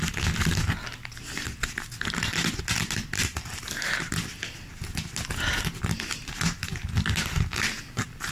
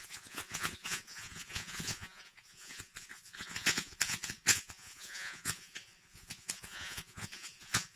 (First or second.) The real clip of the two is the first